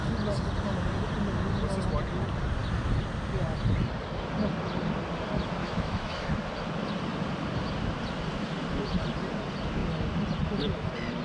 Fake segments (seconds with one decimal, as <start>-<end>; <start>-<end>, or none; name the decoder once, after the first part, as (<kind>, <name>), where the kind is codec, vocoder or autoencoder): 5.6-6.3 (autoencoder, DAC-VAE)